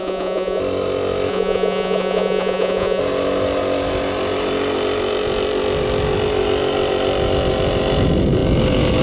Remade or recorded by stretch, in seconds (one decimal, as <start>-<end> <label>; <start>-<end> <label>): 0.0-0.6 remade; 0.6-1.3 recorded; 1.3-3.0 remade; 3.0-9.0 recorded